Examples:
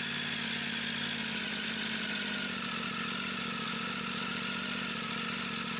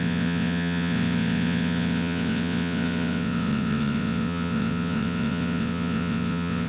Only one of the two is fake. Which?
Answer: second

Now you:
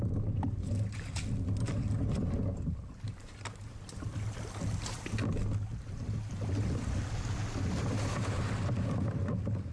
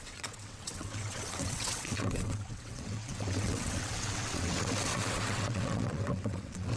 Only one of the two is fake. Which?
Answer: second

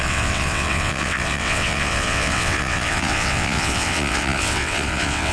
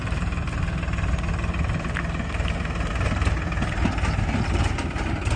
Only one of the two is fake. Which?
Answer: first